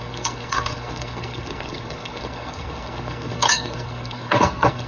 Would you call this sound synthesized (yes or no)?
yes